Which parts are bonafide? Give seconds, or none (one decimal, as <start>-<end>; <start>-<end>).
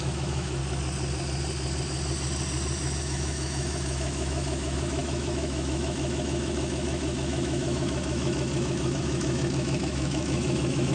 0.6-3.0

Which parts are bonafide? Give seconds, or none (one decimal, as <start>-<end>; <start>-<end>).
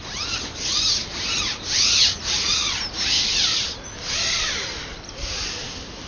0.0-6.1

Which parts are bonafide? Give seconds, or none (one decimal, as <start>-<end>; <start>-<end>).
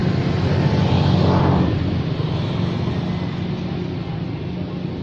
3.0-5.0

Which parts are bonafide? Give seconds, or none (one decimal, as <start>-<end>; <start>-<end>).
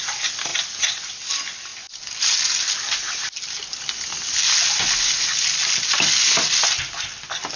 0.0-7.6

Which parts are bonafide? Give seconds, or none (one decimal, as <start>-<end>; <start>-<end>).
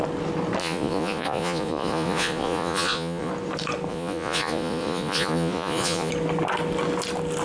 0.0-0.6; 3.3-3.9; 6.1-7.4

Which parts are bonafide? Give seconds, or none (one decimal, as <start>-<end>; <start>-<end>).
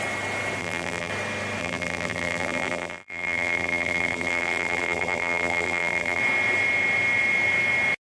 0.0-0.6; 1.1-1.6; 6.2-8.0